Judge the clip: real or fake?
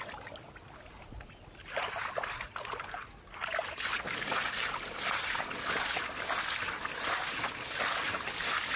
real